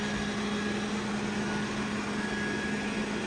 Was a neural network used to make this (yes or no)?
no